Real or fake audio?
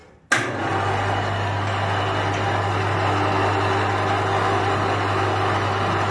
real